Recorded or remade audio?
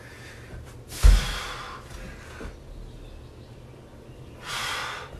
recorded